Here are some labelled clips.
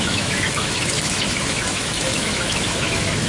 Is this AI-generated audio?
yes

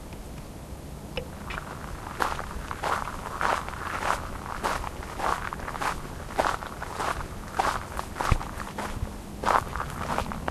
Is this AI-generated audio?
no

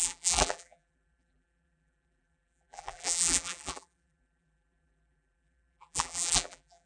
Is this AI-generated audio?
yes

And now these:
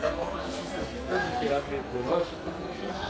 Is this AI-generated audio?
yes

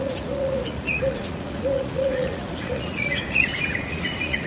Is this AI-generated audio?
yes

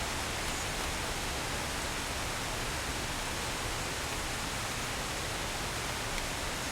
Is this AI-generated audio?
no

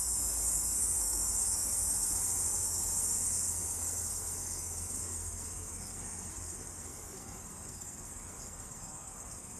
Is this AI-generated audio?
yes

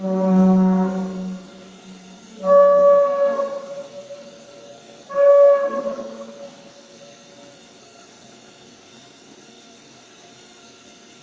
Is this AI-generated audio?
yes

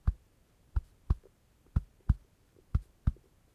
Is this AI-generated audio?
yes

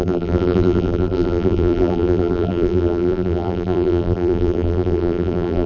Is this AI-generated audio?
yes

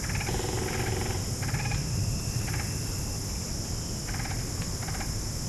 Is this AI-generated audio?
no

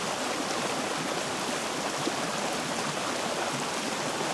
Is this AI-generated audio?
no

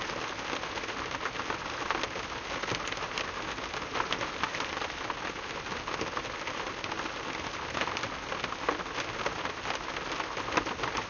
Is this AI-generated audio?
no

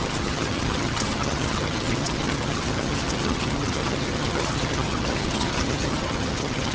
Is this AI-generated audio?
yes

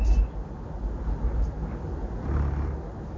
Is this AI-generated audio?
no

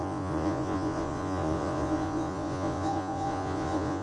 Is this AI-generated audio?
yes